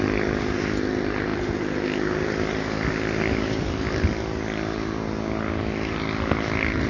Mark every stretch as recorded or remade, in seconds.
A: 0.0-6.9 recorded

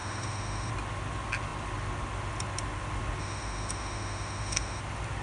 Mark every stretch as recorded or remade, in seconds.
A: 0.0-0.7 remade; 0.7-3.2 recorded; 3.2-4.8 remade; 4.8-5.2 recorded

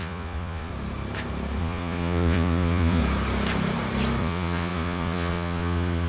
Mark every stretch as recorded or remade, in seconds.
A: 0.0-0.7 remade; 0.7-1.6 recorded; 1.6-3.0 remade; 3.0-4.2 recorded; 4.2-6.1 remade

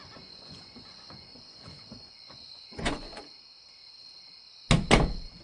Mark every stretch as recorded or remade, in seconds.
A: 0.0-3.2 remade; 3.2-5.4 recorded